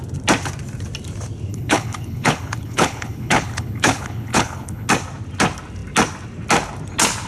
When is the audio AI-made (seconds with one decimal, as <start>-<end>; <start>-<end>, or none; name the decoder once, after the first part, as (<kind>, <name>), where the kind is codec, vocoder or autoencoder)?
1.5-4.9 (codec, HILCodec)